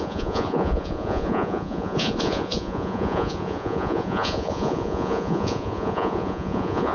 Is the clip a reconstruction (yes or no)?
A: yes